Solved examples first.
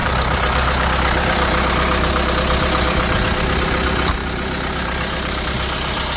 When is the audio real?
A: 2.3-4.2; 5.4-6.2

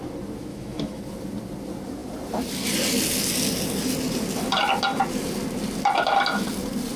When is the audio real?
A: 0.0-0.5; 1.0-7.0

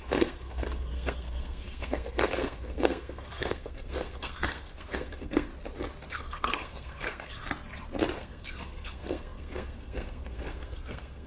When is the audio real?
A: 5.5-6.1; 7.4-8.2

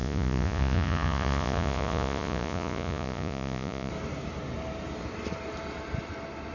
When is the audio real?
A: 3.9-6.5

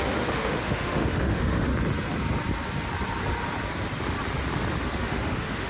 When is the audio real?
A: 1.7-4.8

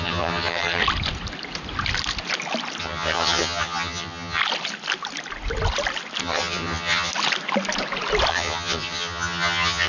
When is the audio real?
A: 0.8-2.8; 4.4-6.2; 7.1-8.3